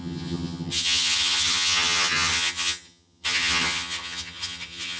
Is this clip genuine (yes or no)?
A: no